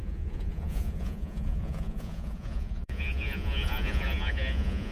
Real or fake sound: fake